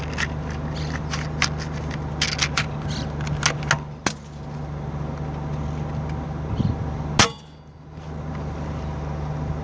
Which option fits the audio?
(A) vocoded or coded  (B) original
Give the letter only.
B